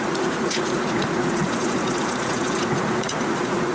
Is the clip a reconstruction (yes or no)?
yes